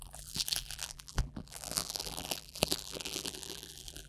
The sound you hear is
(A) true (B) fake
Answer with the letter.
B